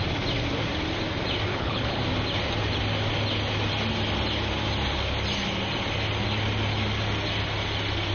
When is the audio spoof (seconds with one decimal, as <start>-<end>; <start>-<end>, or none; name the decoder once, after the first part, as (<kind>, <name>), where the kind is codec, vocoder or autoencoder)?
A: 1.5-2.0 (codec, HILCodec)